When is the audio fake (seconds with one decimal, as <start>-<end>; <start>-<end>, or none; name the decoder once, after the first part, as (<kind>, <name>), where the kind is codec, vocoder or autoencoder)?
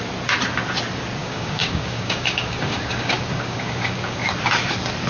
1.2-4.3 (codec, DAC)